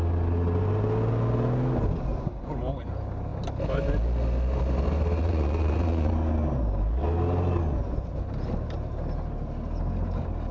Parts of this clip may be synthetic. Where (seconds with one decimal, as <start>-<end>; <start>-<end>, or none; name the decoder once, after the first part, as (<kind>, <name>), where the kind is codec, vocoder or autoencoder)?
5.2-6.1 (vocoder, Vocos)